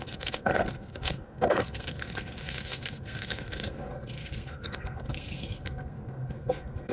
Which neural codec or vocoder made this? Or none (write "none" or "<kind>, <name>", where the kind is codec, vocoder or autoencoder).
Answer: codec, SNAC